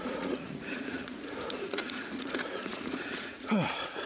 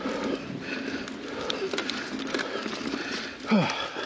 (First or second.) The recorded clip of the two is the second